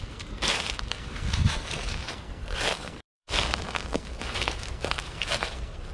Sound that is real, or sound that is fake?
fake